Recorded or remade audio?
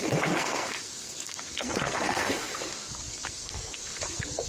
remade